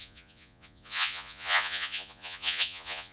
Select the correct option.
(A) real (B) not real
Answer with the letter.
B